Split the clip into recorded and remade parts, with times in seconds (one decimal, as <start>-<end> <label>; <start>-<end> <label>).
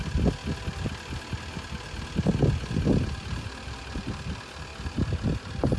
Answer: 0.0-5.8 recorded